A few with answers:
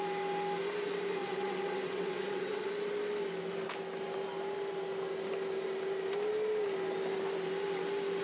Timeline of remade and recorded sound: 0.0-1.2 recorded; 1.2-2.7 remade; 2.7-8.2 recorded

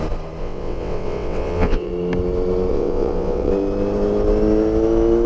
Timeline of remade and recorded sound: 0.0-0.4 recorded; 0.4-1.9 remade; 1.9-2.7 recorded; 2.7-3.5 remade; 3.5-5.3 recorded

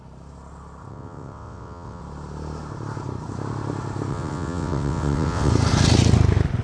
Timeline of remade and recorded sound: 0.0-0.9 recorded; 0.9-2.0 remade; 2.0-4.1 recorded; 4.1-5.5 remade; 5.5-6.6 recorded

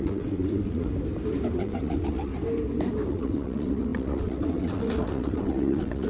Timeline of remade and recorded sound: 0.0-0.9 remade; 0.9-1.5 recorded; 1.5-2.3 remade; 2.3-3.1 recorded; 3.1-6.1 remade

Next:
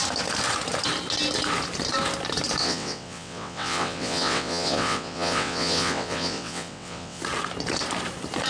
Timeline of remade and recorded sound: 0.0-2.6 recorded; 2.6-7.2 remade; 7.2-8.5 recorded

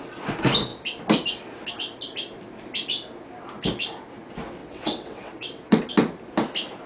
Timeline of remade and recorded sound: 0.0-4.6 recorded; 4.6-5.9 remade; 5.9-6.9 recorded

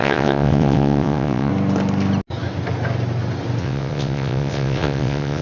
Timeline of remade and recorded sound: 0.0-1.5 remade; 1.5-3.6 recorded; 3.6-5.4 remade

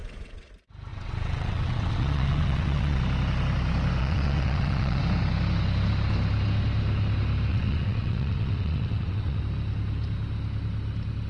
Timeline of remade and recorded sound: 0.0-0.5 remade; 0.5-0.9 recorded; 0.9-3.0 remade; 3.0-4.0 recorded; 4.0-5.0 remade; 5.0-7.5 recorded; 7.5-9.4 remade; 9.4-11.3 recorded